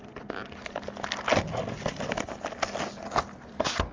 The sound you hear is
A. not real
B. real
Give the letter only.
B